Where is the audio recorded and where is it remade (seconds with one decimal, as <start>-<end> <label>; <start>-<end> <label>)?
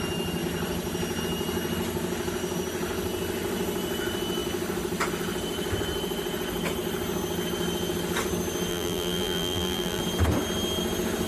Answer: 0.0-8.7 recorded; 8.7-10.0 remade; 10.0-11.3 recorded